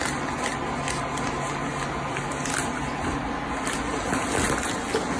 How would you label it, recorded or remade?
recorded